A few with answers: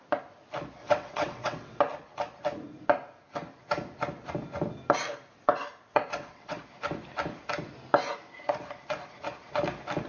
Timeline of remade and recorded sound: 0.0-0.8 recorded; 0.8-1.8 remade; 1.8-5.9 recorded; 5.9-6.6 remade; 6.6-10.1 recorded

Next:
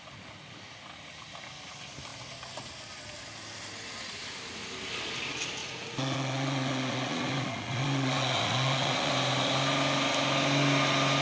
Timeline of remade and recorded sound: 0.0-5.6 recorded; 5.6-9.1 remade; 9.1-11.2 recorded

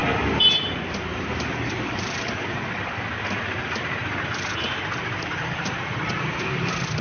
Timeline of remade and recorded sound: 0.0-7.0 remade

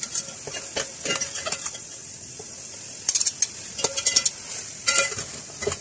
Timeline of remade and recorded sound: 0.0-2.0 recorded; 2.0-3.3 remade; 3.3-5.8 recorded